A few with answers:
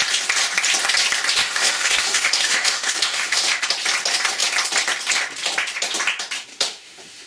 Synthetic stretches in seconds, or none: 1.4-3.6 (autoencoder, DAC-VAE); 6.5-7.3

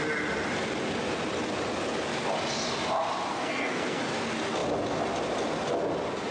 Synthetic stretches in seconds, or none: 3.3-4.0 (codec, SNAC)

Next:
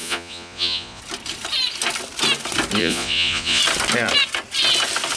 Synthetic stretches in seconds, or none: 0.0-1.0 (vocoder, Vocos); 2.8-3.6

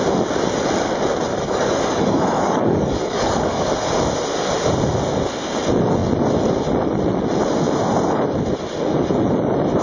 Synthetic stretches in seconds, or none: 1.3-3.7 (codec, DAC)

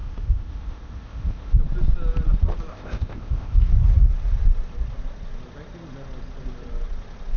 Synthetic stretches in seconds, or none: 0.0-1.6 (codec, ZipCodec); 2.7-3.7